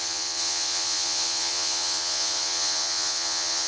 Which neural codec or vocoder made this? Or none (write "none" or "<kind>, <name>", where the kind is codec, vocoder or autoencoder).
vocoder, Vocos